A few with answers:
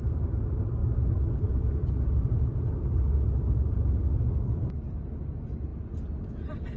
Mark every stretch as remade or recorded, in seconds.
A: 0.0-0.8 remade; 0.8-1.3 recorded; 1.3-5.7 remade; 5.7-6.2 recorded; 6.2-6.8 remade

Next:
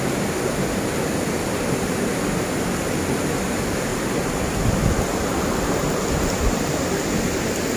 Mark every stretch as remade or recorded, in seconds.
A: 0.0-3.9 recorded; 3.9-4.5 remade; 4.5-7.8 recorded

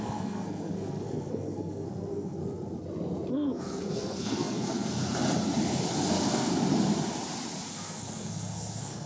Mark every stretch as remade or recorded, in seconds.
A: 0.0-2.4 remade; 2.4-3.3 recorded; 3.3-5.0 remade; 5.0-6.1 recorded; 6.1-6.5 remade; 6.5-7.7 recorded; 7.7-9.1 remade

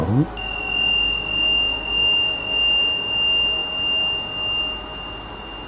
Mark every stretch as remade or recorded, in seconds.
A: 0.0-5.7 recorded

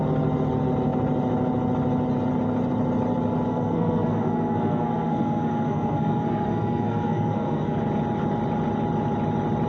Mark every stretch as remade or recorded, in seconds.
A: 0.0-3.5 recorded; 3.5-7.8 remade; 7.8-9.7 recorded